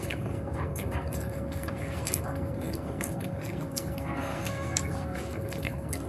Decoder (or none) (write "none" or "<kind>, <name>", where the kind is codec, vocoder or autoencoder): codec, SNAC